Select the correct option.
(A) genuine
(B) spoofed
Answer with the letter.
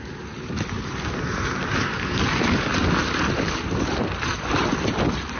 A